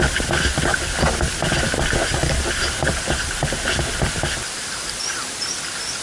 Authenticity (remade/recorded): recorded